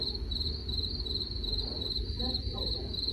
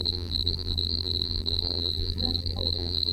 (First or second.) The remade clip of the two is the second